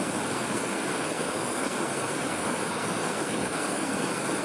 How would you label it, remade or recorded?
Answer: remade